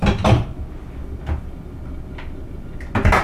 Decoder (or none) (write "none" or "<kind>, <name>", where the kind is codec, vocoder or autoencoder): none